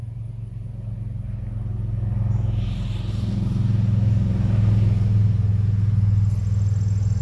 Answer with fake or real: real